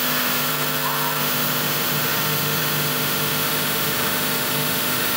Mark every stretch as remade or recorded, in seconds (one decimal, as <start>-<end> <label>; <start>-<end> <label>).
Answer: 0.0-0.5 remade; 0.5-1.2 recorded; 1.2-5.2 remade